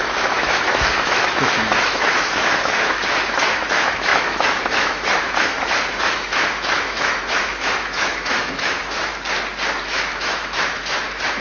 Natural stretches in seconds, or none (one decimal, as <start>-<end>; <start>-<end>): 9.1-9.8